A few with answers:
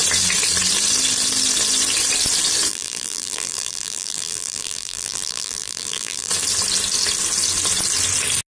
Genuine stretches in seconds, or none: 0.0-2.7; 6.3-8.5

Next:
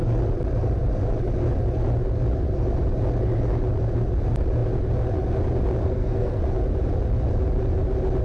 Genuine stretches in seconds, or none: 0.0-5.8; 6.4-8.2

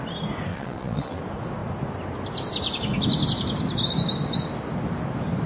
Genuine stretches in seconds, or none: 0.0-0.5; 1.2-5.5